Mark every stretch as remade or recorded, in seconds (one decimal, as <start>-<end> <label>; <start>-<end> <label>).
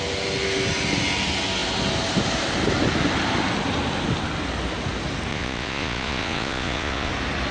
0.0-5.3 recorded; 5.3-7.1 remade; 7.1-7.5 recorded